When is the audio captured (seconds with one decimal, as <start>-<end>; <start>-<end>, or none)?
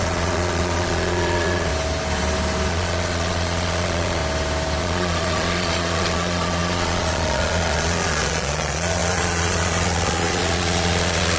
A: 1.7-2.7; 4.2-4.8